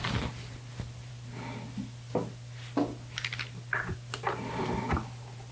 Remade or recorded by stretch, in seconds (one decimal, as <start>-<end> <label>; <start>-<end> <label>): 0.0-5.5 recorded